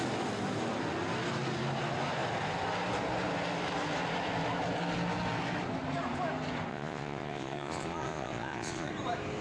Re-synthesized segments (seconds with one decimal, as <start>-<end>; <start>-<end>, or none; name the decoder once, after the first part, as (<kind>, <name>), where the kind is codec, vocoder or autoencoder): 6.7-8.9 (vocoder, Vocos)